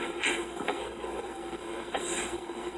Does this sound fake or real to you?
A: fake